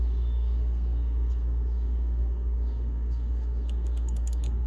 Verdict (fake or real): fake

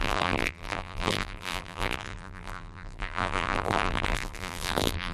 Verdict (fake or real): fake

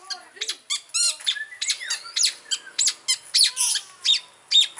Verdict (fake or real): real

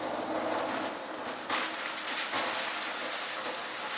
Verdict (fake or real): real